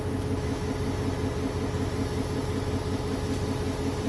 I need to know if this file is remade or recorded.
recorded